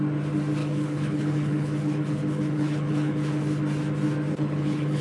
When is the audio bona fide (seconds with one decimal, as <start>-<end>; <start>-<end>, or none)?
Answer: 0.0-0.6; 3.4-4.3